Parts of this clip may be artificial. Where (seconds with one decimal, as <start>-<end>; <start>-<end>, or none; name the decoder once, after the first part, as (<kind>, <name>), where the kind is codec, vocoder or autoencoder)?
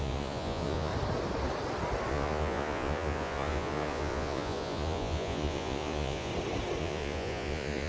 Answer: 0.0-0.9 (vocoder, Vocos); 2.1-6.3; 6.8-7.9